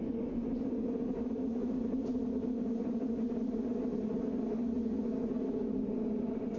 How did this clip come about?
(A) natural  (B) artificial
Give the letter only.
A